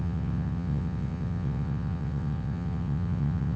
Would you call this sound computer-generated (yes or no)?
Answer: yes